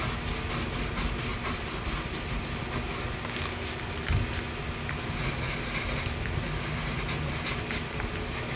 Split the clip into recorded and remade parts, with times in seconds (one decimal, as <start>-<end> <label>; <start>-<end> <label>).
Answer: 0.0-1.3 recorded; 1.3-2.5 remade; 2.5-8.6 recorded